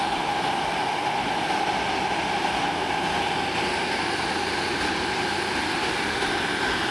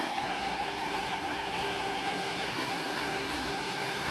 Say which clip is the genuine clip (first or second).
first